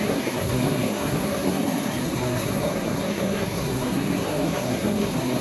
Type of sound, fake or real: fake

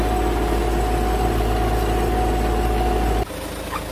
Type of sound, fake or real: real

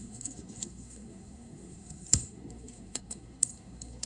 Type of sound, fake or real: fake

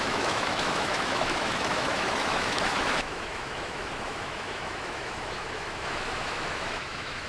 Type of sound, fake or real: fake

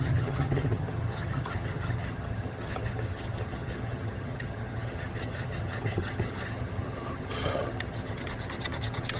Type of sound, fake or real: fake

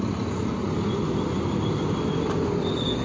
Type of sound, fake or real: real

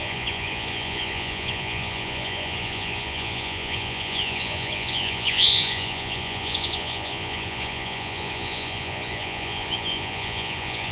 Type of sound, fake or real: fake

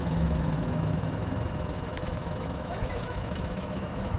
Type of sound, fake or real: fake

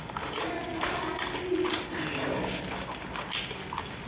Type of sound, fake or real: real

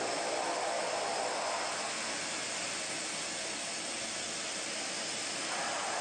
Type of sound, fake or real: real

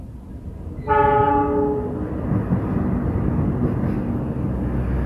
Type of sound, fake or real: real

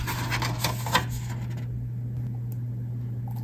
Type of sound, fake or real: real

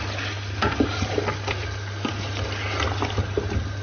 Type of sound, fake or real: real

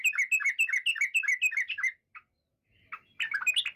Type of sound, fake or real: real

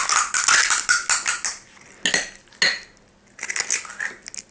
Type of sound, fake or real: real